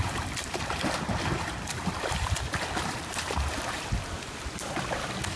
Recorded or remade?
remade